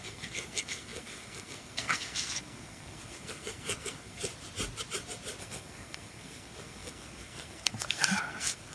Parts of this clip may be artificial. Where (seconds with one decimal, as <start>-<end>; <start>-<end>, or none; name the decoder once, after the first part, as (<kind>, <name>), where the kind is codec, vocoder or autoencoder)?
0.0-4.3 (codec, SNAC); 5.4-8.7